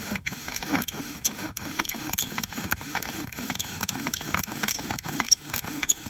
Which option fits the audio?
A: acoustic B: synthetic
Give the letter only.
B